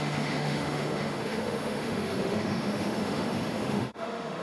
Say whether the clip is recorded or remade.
remade